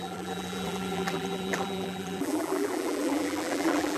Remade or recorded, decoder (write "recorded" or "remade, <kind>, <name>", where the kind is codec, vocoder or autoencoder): remade, vocoder, BigVGAN v2